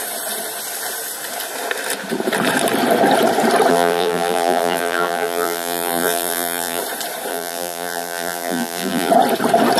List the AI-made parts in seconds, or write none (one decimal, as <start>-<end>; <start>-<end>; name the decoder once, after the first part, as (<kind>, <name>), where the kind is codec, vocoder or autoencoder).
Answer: 3.7-6.8 (vocoder, BigVGAN v2); 7.3-9.1